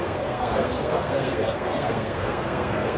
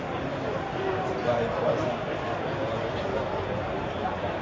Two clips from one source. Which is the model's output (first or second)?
first